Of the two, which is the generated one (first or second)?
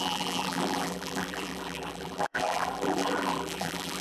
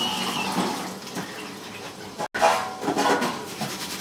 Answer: first